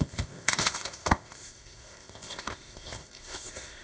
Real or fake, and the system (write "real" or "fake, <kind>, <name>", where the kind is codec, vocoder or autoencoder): fake, codec, ZipCodec